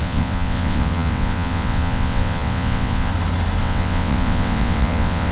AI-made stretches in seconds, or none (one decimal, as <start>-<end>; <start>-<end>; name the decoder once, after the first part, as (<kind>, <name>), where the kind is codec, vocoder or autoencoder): 0.0-3.1 (vocoder, WaveNeXt); 3.6-5.3